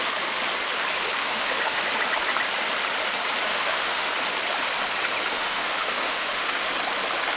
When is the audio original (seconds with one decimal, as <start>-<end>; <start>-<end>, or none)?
0.0-1.2; 1.8-3.5; 4.1-5.3; 6.7-7.4